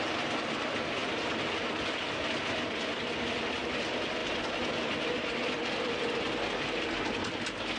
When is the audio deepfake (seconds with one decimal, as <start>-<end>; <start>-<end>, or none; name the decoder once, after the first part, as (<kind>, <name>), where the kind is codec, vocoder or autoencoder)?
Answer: none